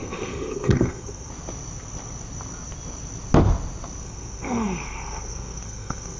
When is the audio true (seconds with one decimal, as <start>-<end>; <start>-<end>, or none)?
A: 1.3-4.0